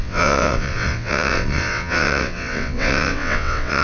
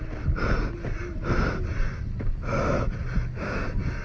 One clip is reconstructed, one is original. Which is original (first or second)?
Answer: second